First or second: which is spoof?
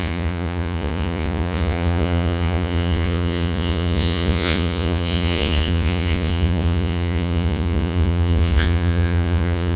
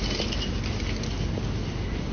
first